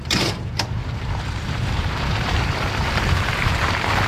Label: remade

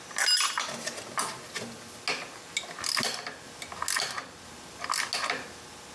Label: recorded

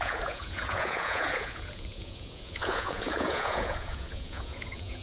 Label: remade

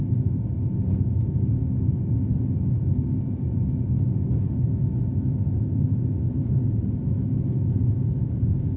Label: remade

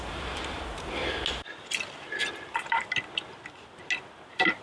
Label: recorded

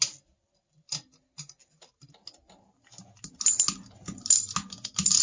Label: recorded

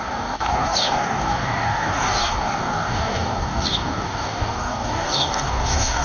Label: remade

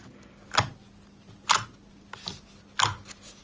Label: recorded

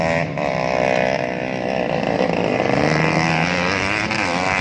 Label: recorded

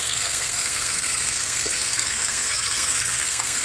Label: remade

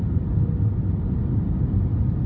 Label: remade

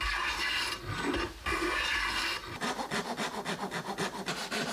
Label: recorded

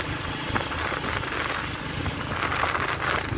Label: recorded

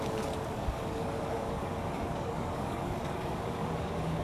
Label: remade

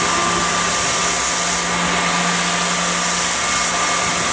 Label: recorded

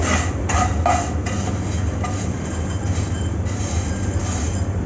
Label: recorded